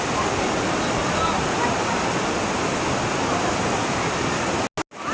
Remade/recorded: recorded